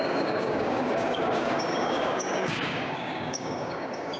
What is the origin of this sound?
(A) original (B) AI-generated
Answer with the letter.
B